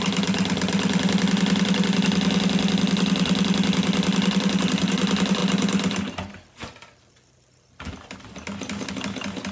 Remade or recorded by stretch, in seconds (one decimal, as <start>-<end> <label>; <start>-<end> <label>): 0.0-9.5 recorded